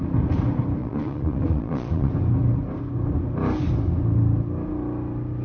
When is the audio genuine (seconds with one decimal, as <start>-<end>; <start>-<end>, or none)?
0.0-0.8; 2.1-5.4